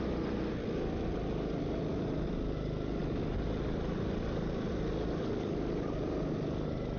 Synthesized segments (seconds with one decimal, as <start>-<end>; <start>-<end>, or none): none

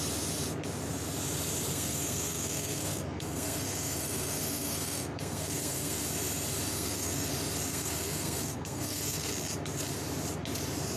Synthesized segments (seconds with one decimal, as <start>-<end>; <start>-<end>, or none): 1.7-6.0; 6.7-7.3; 7.7-9.3